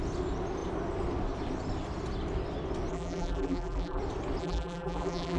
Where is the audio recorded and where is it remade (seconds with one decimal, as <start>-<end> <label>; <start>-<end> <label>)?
0.0-2.9 recorded; 2.9-4.0 remade; 4.0-4.4 recorded; 4.4-5.4 remade